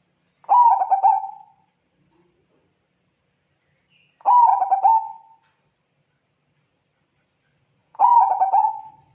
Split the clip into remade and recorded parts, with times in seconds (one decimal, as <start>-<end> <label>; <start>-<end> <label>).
0.0-7.8 recorded; 7.8-8.7 remade; 8.7-9.1 recorded